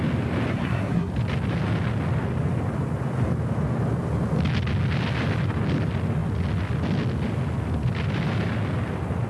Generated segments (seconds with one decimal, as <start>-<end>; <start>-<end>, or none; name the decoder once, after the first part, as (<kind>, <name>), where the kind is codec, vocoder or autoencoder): 0.5-1.1 (codec, SNAC)

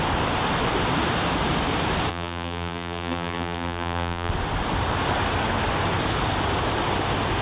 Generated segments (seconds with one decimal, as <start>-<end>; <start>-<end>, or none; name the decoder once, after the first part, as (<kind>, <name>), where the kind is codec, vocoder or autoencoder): 2.1-4.3 (vocoder, BigVGAN v2)

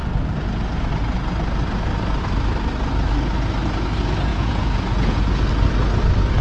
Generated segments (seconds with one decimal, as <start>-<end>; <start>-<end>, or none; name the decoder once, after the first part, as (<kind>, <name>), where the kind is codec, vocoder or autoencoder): 4.3-5.2 (vocoder, Vocos)

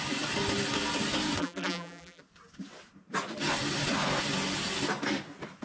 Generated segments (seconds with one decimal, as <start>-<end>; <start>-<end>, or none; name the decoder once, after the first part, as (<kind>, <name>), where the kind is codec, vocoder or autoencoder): 1.4-2.2 (vocoder, BigVGAN v2)

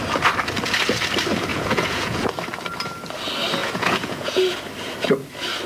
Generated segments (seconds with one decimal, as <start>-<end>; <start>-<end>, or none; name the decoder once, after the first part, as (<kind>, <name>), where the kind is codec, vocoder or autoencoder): 1.5-2.3 (vocoder, Vocos); 3.6-4.4